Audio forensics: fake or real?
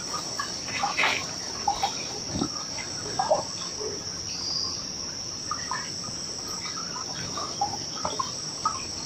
real